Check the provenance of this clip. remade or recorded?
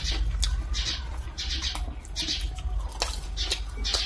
recorded